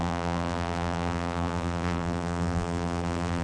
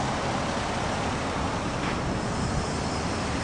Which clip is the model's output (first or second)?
first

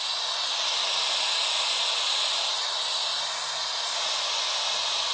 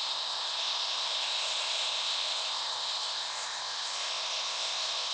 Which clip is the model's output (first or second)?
second